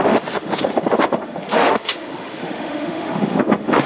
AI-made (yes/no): yes